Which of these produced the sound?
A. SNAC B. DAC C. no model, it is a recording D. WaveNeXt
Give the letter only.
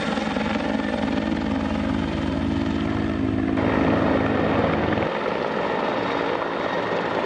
C